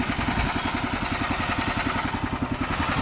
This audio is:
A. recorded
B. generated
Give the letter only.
A